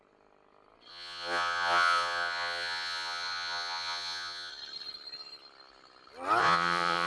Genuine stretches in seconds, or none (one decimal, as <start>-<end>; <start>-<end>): 0.0-0.9; 4.5-6.4